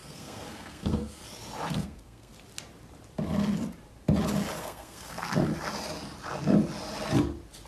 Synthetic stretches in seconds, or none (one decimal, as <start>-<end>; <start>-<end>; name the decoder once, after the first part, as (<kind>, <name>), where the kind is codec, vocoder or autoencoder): 0.0-1.2 (codec, SNAC); 1.7-2.3; 4.6-5.5